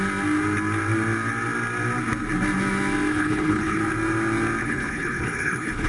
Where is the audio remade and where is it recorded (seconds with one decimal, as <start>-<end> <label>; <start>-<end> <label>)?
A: 0.0-3.1 recorded; 3.1-3.8 remade; 3.8-4.6 recorded; 4.6-5.9 remade